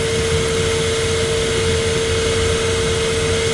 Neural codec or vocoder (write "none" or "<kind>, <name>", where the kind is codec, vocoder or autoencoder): none